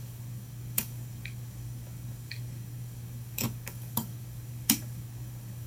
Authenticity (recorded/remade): remade